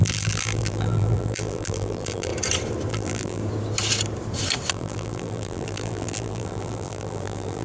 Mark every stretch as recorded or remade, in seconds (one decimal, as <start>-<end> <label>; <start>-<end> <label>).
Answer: 0.0-2.3 remade; 2.3-2.9 recorded; 2.9-3.4 remade; 3.4-4.7 recorded; 4.7-7.6 remade